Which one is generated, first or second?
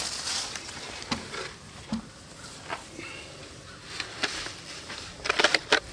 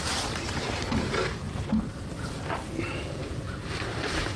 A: second